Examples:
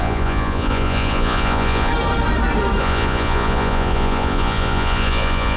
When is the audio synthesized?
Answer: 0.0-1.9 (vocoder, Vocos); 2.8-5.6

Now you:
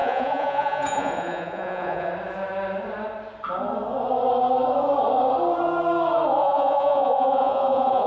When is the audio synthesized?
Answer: 0.0-2.1 (vocoder, Vocos); 6.4-8.1

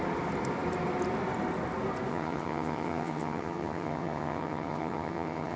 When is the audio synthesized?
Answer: 2.1-5.6 (vocoder, HiFi-GAN)

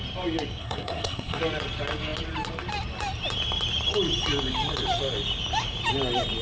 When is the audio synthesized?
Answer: 0.6-1.4 (codec, SNAC)

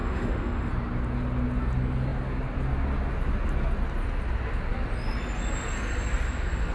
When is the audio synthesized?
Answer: 0.0-0.7 (autoencoder, DAC-VAE)

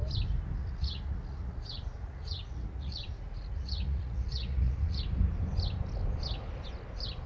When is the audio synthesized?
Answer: 0.6-5.0 (vocoder, Vocos)

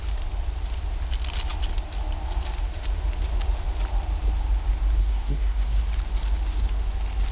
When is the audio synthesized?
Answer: 5.0-5.8 (codec, SNAC)